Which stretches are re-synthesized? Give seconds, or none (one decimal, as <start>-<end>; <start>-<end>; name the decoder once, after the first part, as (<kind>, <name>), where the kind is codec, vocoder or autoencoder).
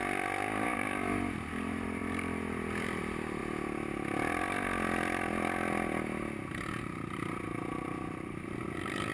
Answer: 0.0-2.0 (vocoder, BigVGAN v2); 3.0-3.4; 7.1-9.1